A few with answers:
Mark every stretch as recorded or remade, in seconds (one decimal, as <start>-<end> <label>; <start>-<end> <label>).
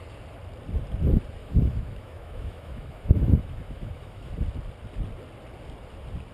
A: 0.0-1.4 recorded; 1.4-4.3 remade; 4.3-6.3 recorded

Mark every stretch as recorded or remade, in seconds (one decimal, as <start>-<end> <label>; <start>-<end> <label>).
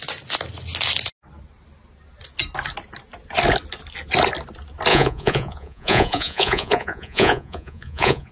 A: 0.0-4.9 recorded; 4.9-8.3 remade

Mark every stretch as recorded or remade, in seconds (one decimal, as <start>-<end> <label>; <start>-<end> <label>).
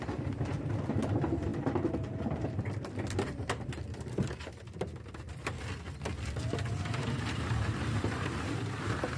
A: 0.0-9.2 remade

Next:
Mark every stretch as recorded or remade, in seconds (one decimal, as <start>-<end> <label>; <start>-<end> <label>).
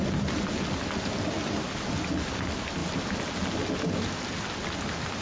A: 0.0-5.2 recorded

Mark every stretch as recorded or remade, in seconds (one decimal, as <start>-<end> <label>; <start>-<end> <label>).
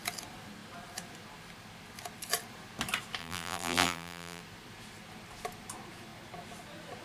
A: 0.0-3.2 recorded; 3.2-4.4 remade; 4.4-7.0 recorded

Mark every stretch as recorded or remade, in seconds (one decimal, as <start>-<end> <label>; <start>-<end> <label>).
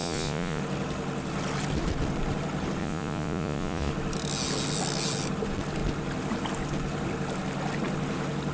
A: 0.0-0.6 remade; 0.6-2.8 recorded; 2.8-3.9 remade; 3.9-8.5 recorded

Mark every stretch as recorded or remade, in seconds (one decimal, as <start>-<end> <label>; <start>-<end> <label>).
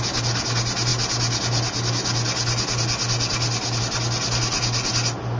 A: 0.0-5.4 recorded